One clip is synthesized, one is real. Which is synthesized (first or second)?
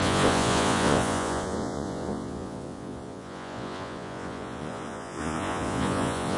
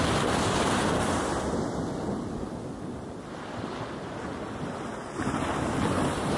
first